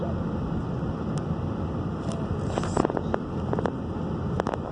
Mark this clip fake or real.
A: real